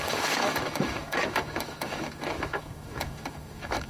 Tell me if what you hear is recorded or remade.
remade